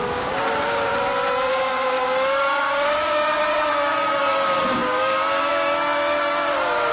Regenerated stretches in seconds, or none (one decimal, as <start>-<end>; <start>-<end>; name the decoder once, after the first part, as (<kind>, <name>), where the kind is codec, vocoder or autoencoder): 0.0-0.9 (codec, DAC); 1.5-6.9